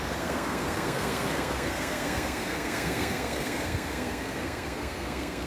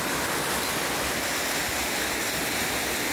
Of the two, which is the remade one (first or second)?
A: first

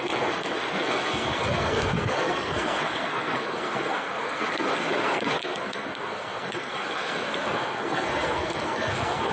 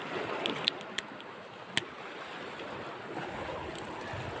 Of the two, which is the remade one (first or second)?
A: first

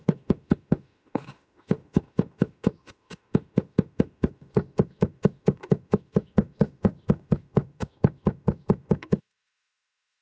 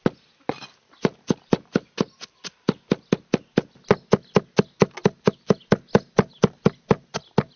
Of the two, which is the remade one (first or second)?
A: first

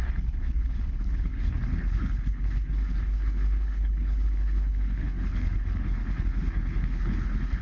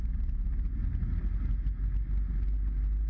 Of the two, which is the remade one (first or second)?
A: first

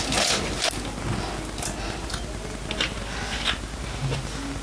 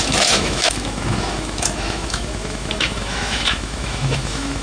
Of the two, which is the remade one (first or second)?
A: second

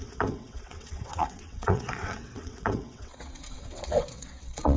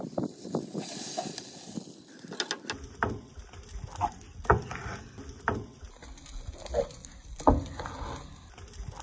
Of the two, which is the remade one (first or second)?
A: first